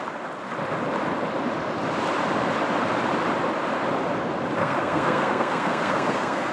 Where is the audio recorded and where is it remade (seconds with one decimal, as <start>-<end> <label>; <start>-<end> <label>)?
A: 0.0-4.6 recorded; 4.6-6.5 remade